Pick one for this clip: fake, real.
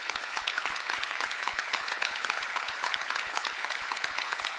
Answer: fake